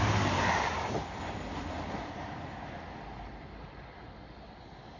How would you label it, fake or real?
real